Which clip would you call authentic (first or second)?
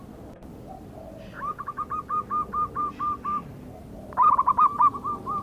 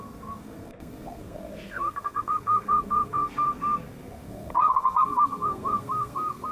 first